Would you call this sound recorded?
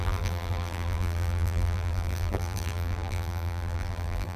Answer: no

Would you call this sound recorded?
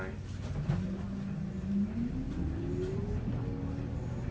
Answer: yes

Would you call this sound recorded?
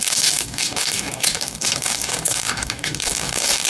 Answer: no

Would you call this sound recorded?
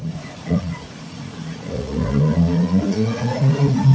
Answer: no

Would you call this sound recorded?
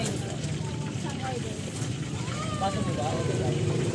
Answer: yes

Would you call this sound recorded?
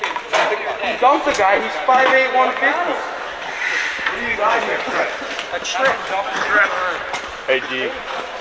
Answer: yes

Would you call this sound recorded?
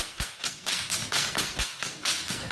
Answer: no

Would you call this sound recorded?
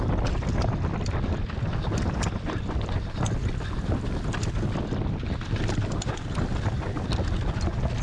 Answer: yes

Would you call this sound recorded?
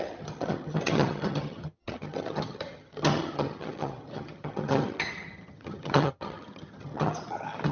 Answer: no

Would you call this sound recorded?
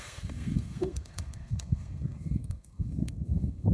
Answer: no